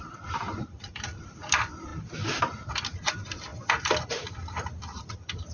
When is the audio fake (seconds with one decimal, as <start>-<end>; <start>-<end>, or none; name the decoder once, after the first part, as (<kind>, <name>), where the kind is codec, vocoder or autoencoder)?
0.0-5.5 (vocoder, BigVGAN v2)